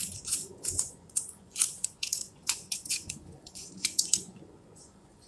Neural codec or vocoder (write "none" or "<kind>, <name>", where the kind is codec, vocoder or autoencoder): vocoder, Vocos